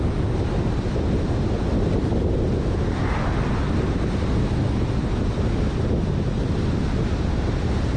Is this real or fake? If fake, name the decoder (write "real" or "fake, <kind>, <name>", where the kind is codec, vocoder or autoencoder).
real